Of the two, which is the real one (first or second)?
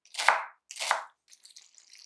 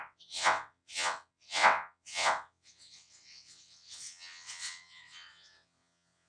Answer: first